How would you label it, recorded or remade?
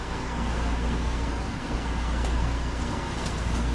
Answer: remade